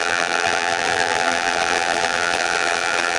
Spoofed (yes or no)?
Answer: yes